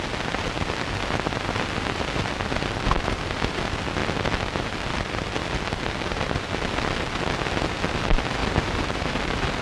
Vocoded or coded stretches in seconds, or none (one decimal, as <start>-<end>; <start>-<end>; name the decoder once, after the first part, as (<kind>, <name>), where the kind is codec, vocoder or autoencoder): 8.4-9.1 (vocoder, BigVGAN v2)